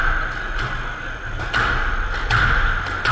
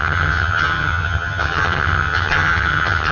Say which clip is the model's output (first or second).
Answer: second